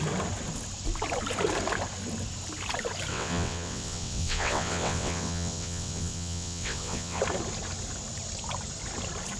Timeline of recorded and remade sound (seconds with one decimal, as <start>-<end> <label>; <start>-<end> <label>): 0.0-3.1 recorded; 3.1-7.2 remade; 7.2-9.4 recorded